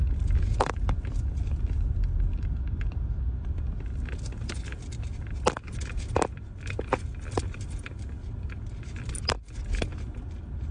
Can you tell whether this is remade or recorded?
recorded